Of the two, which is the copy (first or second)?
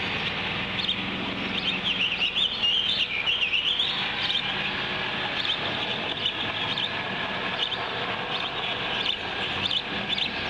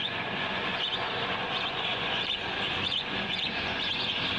second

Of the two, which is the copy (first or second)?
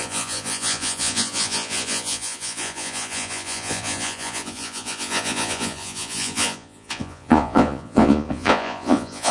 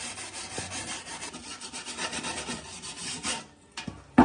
first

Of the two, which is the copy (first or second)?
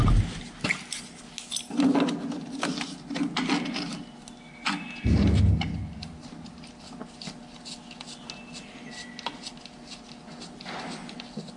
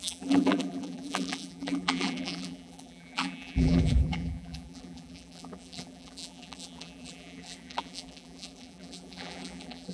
second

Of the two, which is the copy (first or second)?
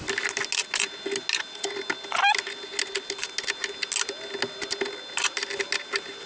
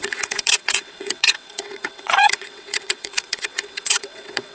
second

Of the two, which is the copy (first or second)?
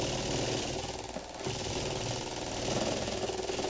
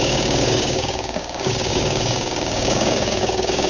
second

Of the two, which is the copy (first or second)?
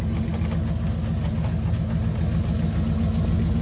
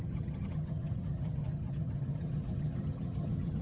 second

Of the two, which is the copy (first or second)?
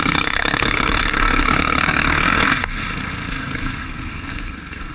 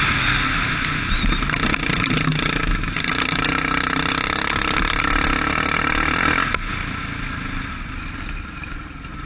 first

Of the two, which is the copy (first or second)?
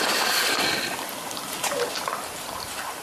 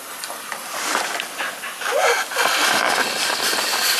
first